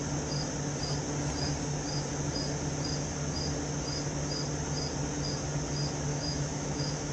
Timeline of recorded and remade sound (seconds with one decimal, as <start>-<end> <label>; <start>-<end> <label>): 0.0-6.1 recorded; 6.1-7.1 remade

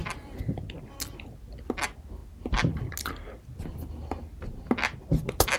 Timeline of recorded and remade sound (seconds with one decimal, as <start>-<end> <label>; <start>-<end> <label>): 0.0-0.6 remade; 0.6-5.6 recorded

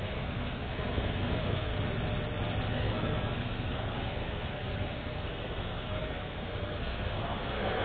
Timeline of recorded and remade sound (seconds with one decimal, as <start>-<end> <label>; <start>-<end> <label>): 0.0-1.7 remade; 1.7-2.7 recorded; 2.7-7.8 remade

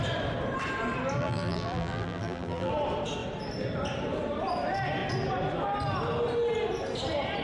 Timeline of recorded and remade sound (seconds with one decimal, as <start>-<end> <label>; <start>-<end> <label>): 0.0-1.2 recorded; 1.2-2.7 remade; 2.7-7.4 recorded

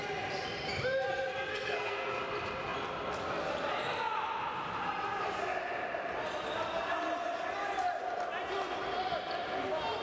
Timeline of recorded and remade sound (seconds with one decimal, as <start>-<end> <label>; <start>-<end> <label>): 0.0-1.5 recorded; 1.5-2.2 remade; 2.2-10.0 recorded